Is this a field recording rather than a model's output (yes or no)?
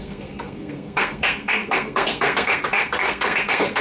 no